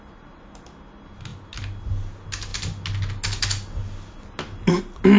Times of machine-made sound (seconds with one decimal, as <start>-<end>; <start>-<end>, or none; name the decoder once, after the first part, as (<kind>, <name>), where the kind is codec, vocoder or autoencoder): none